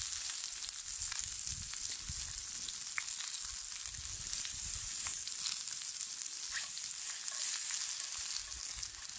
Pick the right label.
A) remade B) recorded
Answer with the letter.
B